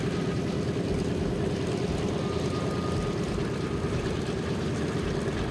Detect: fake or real real